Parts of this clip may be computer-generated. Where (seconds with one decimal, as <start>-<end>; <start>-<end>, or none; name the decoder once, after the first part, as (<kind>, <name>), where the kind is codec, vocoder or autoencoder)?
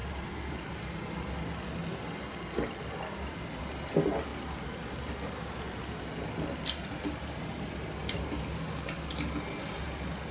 none